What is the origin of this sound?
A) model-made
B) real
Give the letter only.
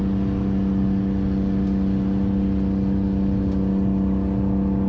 B